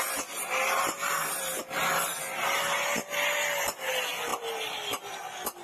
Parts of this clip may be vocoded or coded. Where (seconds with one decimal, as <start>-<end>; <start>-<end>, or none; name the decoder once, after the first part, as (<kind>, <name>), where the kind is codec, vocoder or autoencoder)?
1.0-2.2 (vocoder, BigVGAN v2); 4.3-5.1